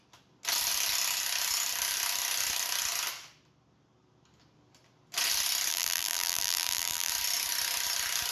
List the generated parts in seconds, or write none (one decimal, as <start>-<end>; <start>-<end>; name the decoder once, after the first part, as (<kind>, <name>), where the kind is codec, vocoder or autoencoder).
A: 5.7-7.1 (vocoder, BigVGAN v2)